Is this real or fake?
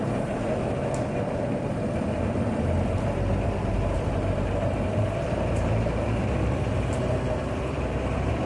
fake